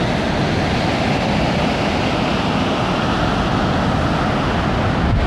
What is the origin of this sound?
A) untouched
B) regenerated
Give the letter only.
A